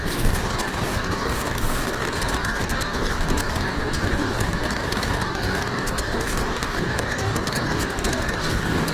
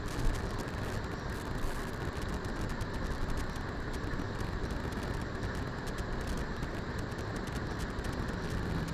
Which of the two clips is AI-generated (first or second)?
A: first